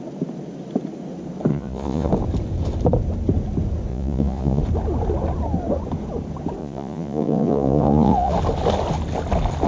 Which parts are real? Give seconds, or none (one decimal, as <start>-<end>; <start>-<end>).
0.0-1.5; 2.1-3.9; 4.6-6.6; 8.3-9.7